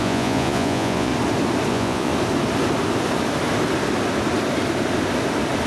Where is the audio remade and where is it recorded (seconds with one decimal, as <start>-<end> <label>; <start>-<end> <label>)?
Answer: 0.0-1.1 remade; 1.1-1.7 recorded; 1.7-2.1 remade; 2.1-5.7 recorded